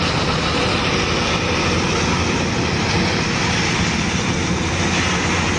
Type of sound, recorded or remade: recorded